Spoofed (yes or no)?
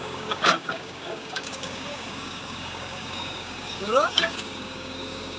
yes